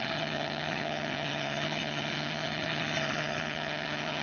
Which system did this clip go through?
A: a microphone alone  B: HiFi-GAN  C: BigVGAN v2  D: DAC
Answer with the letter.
B